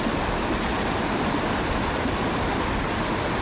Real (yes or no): yes